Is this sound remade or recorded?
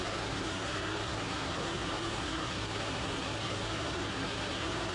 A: remade